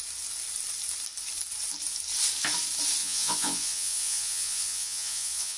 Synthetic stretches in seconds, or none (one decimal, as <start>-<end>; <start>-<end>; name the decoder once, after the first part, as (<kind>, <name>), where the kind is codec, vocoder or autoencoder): 3.0-5.6 (vocoder, Vocos)